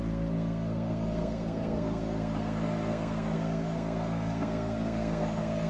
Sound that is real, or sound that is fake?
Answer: fake